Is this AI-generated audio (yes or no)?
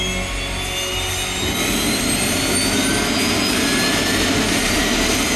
no